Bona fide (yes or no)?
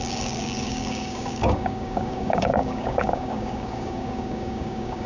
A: no